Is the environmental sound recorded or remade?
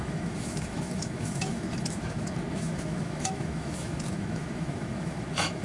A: remade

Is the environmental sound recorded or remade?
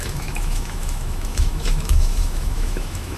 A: remade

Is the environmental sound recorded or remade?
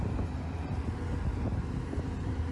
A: recorded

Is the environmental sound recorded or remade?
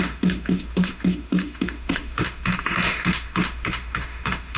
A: remade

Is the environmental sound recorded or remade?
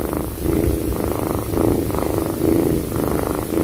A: recorded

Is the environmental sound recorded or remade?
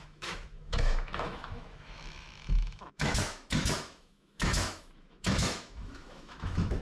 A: remade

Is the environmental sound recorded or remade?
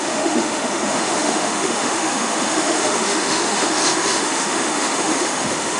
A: remade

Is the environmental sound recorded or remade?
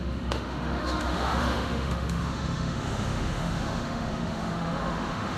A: remade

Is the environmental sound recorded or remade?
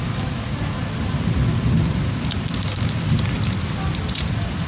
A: recorded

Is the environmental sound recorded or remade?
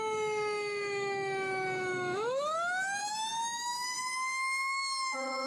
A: remade